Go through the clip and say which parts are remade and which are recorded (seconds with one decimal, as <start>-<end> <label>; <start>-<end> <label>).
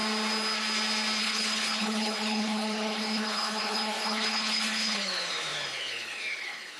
0.0-1.2 recorded; 1.2-6.8 remade